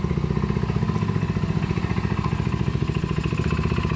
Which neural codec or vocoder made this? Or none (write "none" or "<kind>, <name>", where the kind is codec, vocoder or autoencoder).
none